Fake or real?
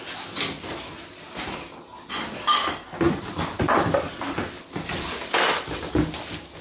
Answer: real